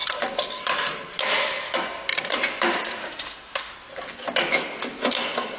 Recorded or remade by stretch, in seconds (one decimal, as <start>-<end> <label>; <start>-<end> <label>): 0.0-3.0 recorded; 3.0-3.7 remade; 3.7-5.6 recorded